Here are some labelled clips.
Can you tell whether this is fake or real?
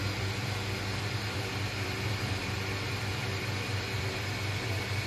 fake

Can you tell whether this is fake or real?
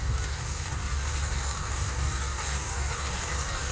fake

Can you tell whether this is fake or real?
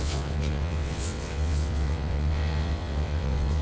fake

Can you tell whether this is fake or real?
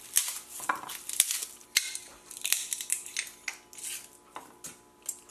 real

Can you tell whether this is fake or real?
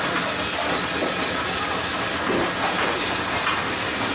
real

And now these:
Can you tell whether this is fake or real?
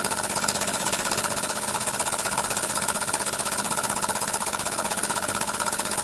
fake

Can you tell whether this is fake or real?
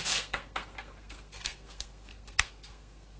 fake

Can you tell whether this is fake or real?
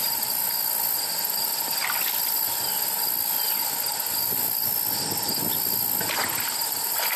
real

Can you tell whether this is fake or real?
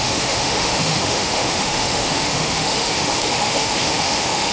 fake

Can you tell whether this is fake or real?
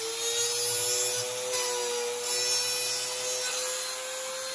real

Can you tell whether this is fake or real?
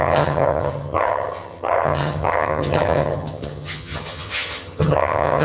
fake